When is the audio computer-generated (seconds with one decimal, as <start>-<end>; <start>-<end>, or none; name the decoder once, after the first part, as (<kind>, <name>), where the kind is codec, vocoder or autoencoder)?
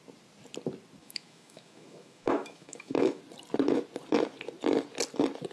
1.0-3.2 (autoencoder, DAC-VAE)